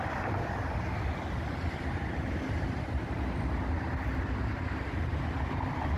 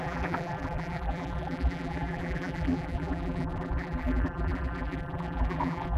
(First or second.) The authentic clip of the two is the first